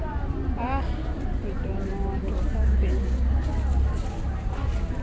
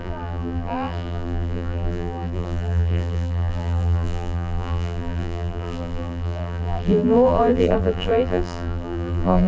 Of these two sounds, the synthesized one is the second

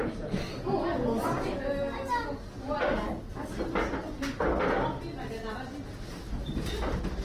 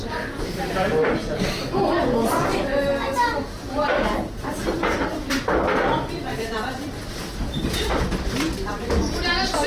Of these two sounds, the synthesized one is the second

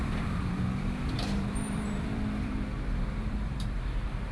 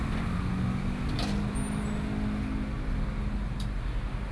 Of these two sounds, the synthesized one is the first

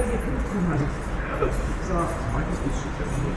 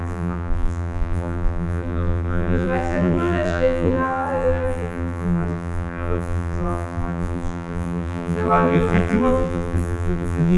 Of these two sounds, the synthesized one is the second